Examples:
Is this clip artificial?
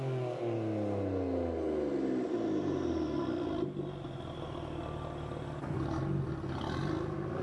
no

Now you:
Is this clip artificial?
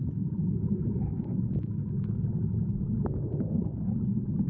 no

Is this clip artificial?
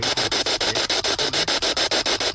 no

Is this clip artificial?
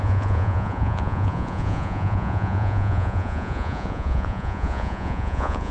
yes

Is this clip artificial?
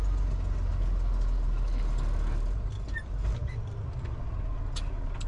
no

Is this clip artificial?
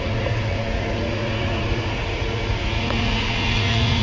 yes